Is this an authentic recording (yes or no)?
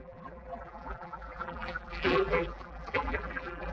no